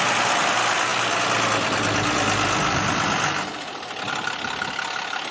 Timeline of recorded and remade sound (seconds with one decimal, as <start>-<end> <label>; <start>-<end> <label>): 0.0-5.3 recorded

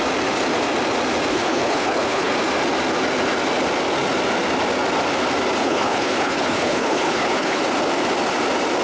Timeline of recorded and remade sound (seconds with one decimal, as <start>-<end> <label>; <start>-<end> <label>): 0.0-1.3 recorded; 1.3-2.3 remade; 2.3-5.6 recorded; 5.6-7.6 remade; 7.6-8.8 recorded